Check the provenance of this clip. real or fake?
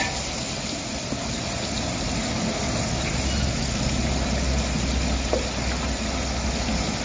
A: real